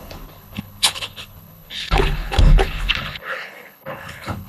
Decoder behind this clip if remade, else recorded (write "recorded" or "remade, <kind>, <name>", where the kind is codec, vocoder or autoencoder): remade, codec, HILCodec